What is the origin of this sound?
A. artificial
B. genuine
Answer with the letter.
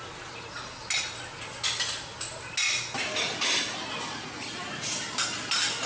B